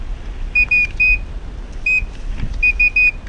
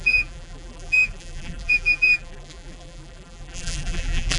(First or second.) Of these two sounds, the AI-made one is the second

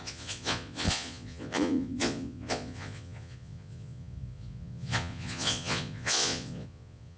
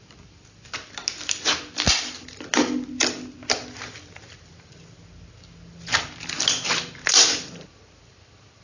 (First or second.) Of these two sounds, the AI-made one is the first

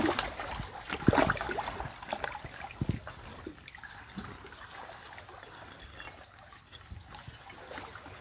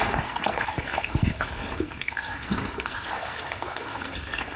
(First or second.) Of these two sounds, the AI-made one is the second